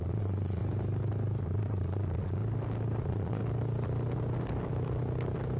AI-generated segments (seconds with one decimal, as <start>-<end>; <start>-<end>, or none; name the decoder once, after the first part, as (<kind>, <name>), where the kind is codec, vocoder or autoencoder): 0.0-0.6 (vocoder, Vocos); 1.4-2.4; 3.0-3.4